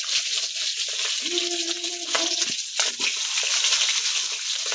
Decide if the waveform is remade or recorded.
recorded